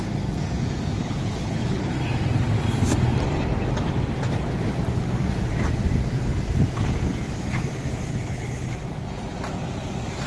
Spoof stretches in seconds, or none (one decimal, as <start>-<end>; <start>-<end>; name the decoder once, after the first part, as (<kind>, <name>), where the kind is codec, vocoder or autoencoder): 1.0-1.9 (codec, HILCodec); 8.1-8.7